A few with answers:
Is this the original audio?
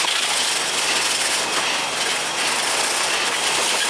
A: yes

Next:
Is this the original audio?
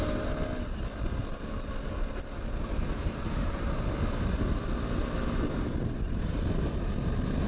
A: yes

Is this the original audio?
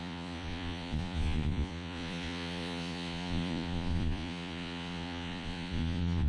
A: no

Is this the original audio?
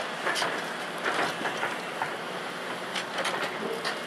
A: yes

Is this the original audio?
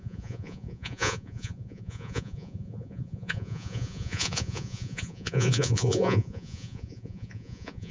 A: no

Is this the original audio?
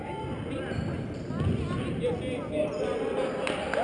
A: yes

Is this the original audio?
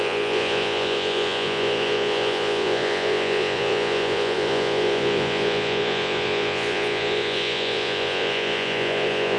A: no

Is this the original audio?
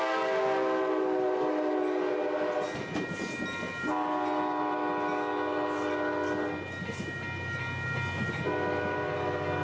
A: yes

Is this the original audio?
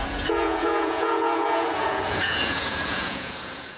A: no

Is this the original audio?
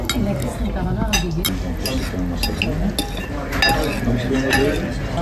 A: yes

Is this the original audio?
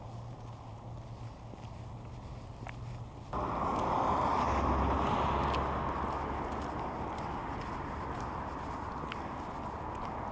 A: yes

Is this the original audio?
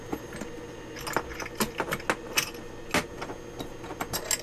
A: yes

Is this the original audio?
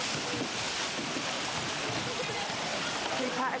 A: yes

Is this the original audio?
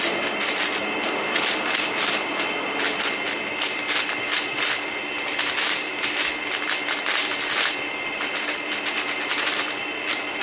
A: yes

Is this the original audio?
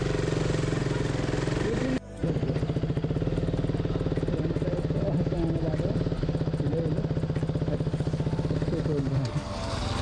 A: yes